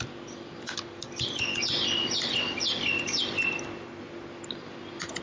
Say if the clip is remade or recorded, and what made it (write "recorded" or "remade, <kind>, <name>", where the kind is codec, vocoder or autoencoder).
recorded